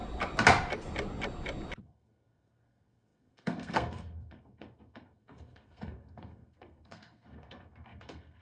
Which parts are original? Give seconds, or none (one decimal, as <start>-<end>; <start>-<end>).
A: 0.0-1.8